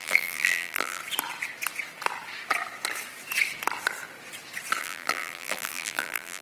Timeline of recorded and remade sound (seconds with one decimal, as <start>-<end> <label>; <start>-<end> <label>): 0.0-1.0 remade; 1.0-4.8 recorded; 4.8-6.4 remade